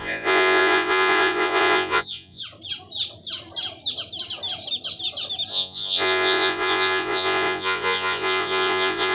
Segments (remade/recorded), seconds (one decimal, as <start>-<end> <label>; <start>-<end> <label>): 0.0-2.4 remade; 2.4-5.5 recorded; 5.5-9.1 remade